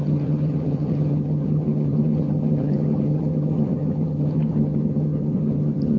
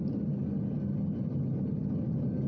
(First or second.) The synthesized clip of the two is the first